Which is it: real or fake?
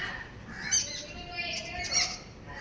real